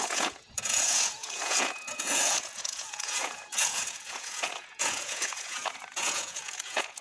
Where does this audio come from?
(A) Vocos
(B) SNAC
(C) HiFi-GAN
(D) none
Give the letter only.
A